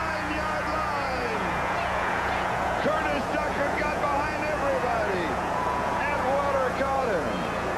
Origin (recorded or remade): remade